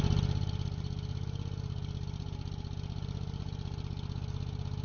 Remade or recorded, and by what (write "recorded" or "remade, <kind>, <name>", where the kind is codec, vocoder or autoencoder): recorded